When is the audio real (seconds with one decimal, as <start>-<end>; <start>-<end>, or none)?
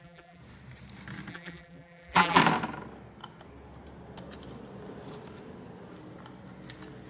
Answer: 0.4-1.3; 2.4-7.1